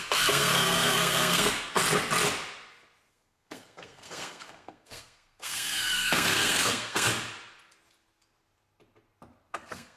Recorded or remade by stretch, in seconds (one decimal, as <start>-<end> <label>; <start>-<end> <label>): 0.0-1.8 remade; 1.8-3.1 recorded; 3.1-7.1 remade; 7.1-9.5 recorded; 9.5-10.0 remade